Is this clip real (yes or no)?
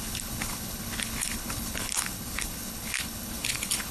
no